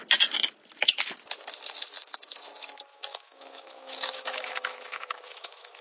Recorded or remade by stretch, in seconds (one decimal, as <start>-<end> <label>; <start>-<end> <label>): 0.0-2.9 recorded; 2.9-5.8 remade

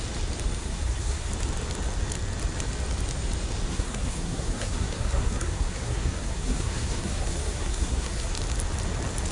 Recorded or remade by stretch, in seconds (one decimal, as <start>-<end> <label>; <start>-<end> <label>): 0.0-0.6 recorded; 0.6-1.3 remade; 1.3-3.7 recorded; 3.7-8.3 remade; 8.3-9.3 recorded

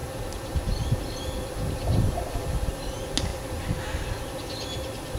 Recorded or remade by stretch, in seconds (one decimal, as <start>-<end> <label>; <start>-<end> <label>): 0.0-5.2 recorded

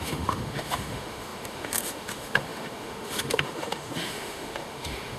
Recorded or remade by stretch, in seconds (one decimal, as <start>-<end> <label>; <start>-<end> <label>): 0.0-5.2 remade